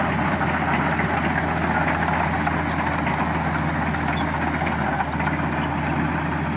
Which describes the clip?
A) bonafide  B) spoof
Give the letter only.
A